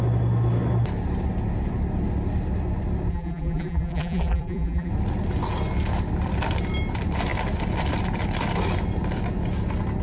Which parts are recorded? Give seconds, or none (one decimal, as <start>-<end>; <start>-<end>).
0.0-3.1; 4.9-10.0